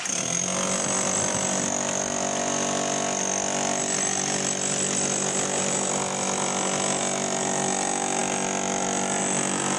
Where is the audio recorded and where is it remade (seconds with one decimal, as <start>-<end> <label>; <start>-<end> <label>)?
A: 0.0-9.8 recorded